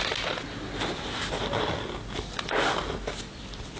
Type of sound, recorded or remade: recorded